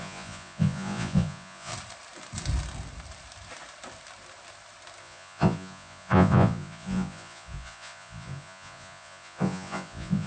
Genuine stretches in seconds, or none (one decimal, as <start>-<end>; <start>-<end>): 1.7-5.0